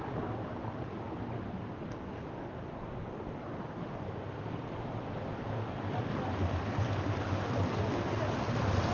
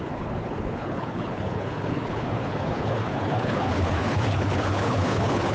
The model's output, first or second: second